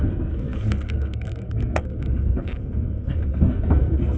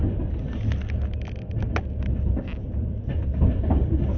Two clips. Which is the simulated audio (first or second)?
first